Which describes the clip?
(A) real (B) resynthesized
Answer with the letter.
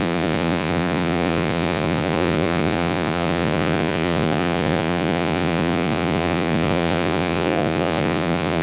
B